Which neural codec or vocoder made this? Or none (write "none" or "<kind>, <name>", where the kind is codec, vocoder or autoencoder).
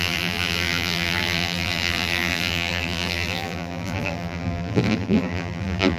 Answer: vocoder, BigVGAN v2